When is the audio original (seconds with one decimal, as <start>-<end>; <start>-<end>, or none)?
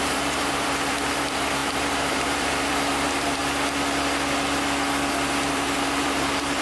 3.4-5.5